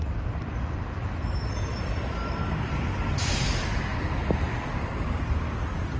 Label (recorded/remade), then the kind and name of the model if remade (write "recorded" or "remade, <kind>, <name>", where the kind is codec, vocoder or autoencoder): remade, vocoder, BigVGAN v2